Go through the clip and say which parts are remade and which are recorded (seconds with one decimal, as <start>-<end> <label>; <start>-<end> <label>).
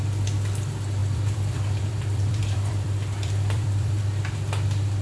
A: 0.0-1.0 recorded; 1.0-4.0 remade; 4.0-5.0 recorded